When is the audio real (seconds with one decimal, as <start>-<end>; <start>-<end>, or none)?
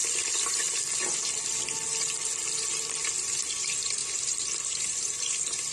0.0-3.4